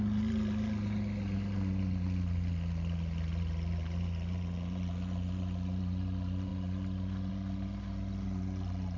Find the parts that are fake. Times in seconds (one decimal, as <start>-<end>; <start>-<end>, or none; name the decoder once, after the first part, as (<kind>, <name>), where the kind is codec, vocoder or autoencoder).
none